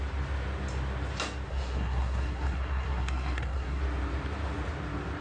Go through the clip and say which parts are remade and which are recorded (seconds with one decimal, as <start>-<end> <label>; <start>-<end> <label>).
0.0-1.5 recorded; 1.5-3.8 remade; 3.8-5.2 recorded